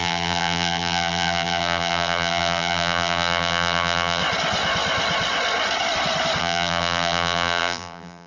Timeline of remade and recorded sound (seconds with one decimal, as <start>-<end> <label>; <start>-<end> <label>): 0.0-4.2 remade; 4.2-6.4 recorded; 6.4-8.3 remade